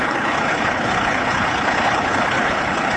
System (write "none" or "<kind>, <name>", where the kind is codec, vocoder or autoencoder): codec, HILCodec